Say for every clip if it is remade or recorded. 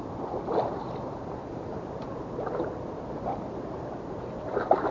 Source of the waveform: remade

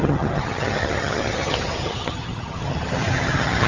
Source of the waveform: remade